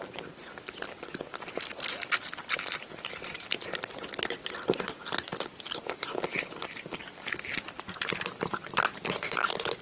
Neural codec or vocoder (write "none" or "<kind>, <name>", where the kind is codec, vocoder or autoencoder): vocoder, BigVGAN v2